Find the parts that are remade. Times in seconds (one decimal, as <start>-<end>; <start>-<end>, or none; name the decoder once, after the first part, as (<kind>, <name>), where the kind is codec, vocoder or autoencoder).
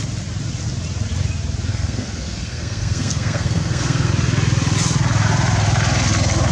1.7-4.1 (codec, SNAC)